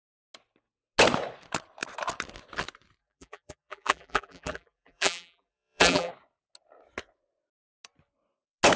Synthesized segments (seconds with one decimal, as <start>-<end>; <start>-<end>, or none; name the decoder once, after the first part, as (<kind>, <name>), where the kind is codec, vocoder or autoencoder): 3.0-6.1 (vocoder, BigVGAN v2)